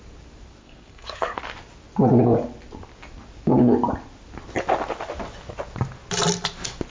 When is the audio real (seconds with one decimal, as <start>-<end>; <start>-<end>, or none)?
0.0-0.6; 1.4-6.9